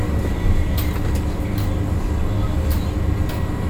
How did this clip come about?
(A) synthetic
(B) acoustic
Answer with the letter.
B